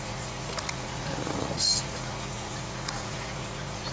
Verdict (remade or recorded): remade